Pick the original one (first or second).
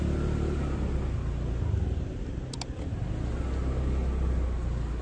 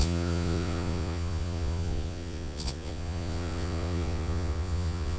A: first